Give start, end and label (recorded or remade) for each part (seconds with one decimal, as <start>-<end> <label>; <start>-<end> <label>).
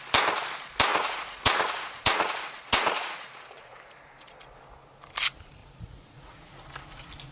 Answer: 0.0-0.9 recorded; 0.9-3.8 remade; 3.8-5.6 recorded; 5.6-6.6 remade; 6.6-7.3 recorded